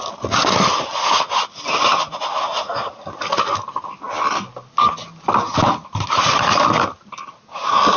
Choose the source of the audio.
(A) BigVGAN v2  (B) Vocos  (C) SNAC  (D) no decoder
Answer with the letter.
D